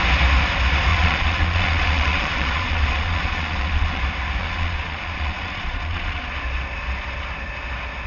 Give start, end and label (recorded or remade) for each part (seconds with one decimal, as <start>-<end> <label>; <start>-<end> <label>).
0.0-0.9 recorded; 0.9-4.0 remade; 4.0-4.4 recorded; 4.4-6.2 remade; 6.2-8.1 recorded